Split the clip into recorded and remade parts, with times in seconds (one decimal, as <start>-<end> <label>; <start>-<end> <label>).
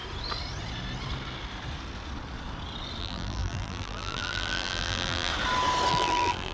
0.0-3.0 recorded; 3.0-5.3 remade; 5.3-5.9 recorded; 5.9-6.5 remade